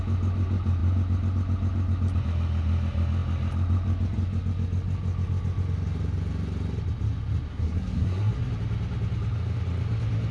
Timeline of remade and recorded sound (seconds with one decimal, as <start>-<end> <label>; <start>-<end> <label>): 0.0-7.5 recorded; 7.5-8.3 remade; 8.3-10.3 recorded